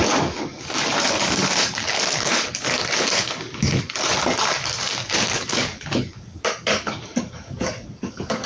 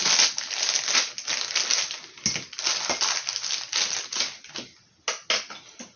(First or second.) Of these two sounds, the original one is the second